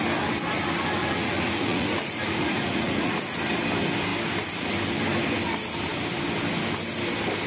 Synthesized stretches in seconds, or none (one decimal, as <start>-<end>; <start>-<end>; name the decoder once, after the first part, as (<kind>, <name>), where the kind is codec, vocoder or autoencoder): 1.0-3.2 (vocoder, Vocos)